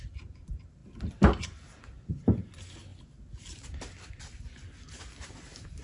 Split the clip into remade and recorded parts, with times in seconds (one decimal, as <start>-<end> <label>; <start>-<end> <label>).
0.0-0.8 remade; 0.8-2.1 recorded; 2.1-2.9 remade; 2.9-4.9 recorded; 4.9-5.8 remade